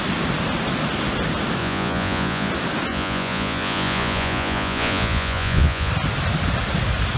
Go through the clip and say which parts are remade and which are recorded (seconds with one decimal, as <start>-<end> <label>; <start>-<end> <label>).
0.0-1.6 recorded; 1.6-2.5 remade; 2.5-2.9 recorded; 2.9-5.9 remade; 5.9-7.2 recorded